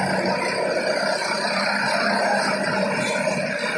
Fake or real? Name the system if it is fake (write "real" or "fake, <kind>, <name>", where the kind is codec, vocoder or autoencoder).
real